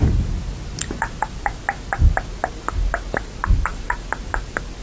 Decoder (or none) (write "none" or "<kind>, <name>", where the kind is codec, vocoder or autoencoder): none